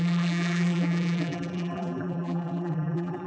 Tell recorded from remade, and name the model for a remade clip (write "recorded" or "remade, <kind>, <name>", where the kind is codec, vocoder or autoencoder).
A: remade, vocoder, BigVGAN v2